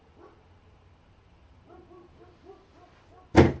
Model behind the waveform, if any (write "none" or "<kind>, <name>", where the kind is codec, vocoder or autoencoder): none